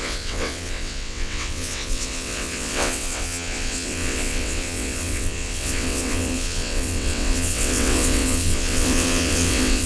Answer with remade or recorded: remade